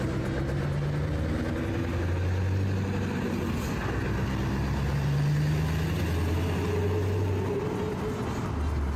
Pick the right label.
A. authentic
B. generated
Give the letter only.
A